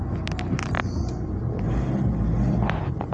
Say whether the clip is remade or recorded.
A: recorded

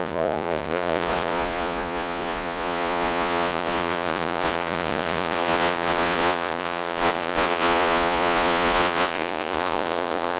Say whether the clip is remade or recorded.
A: remade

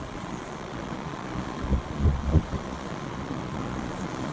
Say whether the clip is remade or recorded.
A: remade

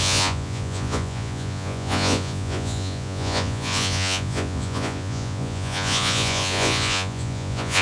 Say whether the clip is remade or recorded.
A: remade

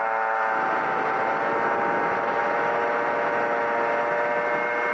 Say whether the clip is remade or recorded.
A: recorded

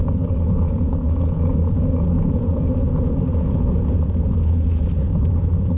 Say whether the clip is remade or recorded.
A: remade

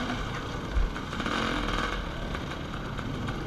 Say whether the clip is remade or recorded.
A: recorded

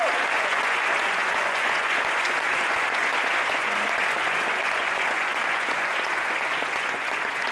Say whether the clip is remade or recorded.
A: remade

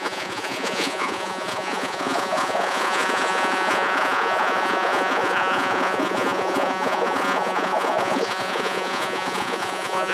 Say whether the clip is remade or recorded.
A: remade